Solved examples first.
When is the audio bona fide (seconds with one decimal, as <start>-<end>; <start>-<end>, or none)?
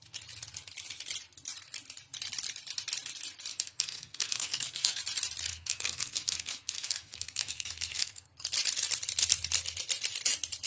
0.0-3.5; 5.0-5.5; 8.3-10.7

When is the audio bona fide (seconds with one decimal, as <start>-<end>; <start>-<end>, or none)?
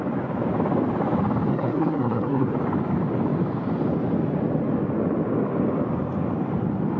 0.0-1.5; 2.5-7.0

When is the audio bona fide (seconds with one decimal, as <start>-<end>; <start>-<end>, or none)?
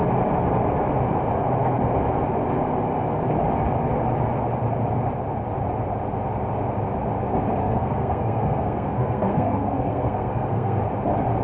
0.0-7.6; 10.8-11.4